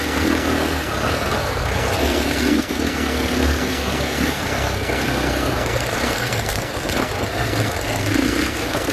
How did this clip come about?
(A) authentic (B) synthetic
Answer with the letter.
B